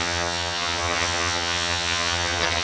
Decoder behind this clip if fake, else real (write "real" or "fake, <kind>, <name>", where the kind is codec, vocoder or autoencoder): fake, vocoder, HiFi-GAN